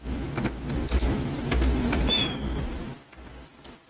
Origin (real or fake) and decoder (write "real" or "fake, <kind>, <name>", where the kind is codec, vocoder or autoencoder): real